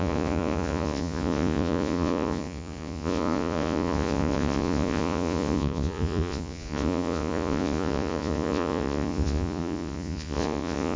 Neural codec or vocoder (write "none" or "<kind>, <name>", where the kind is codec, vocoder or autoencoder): vocoder, Vocos